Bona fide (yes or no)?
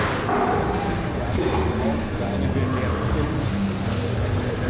yes